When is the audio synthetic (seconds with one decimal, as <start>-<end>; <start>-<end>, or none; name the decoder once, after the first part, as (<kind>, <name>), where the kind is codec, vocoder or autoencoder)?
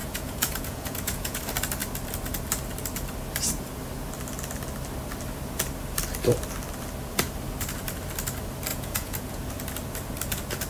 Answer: 0.0-1.4 (vocoder, Vocos); 8.7-9.4